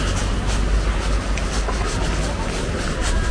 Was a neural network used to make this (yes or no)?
no